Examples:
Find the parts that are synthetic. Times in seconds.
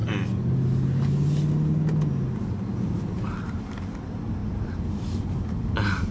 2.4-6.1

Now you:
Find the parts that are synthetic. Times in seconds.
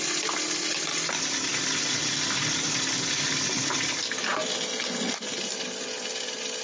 none